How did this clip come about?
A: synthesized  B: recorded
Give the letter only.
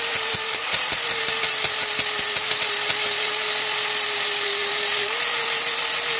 B